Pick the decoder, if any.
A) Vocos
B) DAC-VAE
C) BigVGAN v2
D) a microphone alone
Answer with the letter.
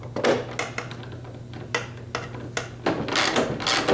D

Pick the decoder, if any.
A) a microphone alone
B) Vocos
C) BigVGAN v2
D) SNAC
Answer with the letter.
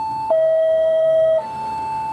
D